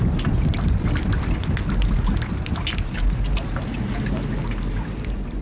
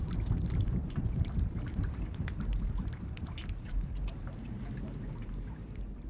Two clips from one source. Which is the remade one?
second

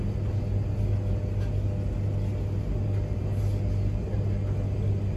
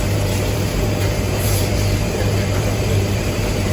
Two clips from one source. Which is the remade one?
second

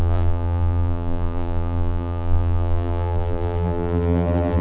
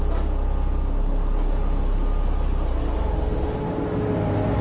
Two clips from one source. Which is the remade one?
first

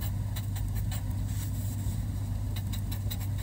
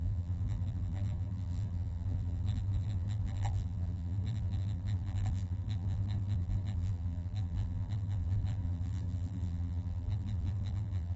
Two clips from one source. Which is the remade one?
second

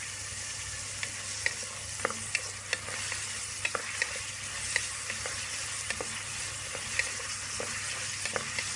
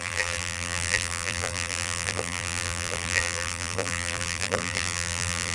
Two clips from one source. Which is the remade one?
second